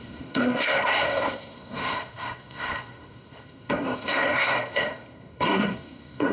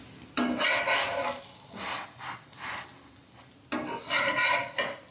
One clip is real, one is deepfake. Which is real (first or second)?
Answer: second